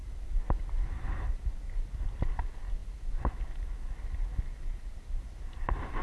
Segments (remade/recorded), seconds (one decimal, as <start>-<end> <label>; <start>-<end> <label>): 0.0-6.0 recorded